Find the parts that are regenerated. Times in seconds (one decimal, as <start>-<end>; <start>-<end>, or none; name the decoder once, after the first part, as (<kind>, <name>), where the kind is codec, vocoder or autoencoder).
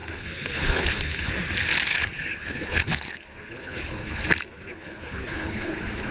0.0-1.3 (codec, HILCodec); 1.9-4.2; 4.7-6.1